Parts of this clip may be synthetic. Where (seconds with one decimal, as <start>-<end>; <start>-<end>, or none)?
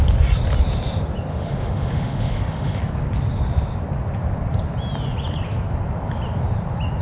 1.3-2.8